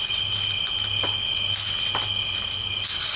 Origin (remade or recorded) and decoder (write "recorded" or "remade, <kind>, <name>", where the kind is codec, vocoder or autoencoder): recorded